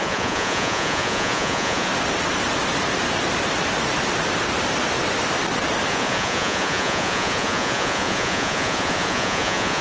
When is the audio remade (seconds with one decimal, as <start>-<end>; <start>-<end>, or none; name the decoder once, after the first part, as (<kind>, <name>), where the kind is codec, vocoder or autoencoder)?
0.0-1.9 (vocoder, Vocos); 5.9-9.8